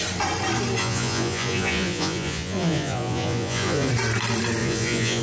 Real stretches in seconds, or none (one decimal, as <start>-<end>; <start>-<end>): 0.0-0.8; 3.9-4.6